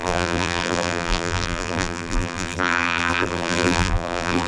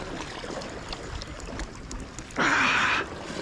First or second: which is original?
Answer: second